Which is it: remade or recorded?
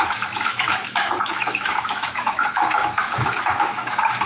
remade